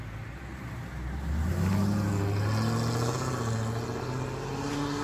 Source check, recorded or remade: recorded